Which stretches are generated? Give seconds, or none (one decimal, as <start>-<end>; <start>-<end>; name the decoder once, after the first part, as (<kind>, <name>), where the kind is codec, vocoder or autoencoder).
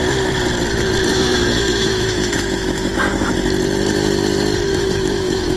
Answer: 1.1-3.3 (autoencoder, DAC-VAE); 4.7-5.6